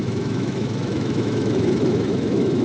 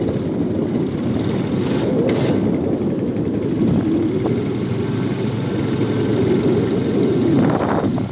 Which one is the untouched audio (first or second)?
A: second